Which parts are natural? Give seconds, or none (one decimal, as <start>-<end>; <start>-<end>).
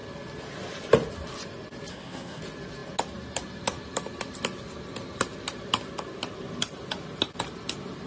0.0-1.9; 2.4-8.1